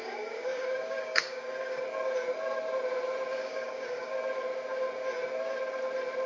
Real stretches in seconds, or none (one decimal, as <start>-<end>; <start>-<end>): 1.8-3.4; 4.1-6.3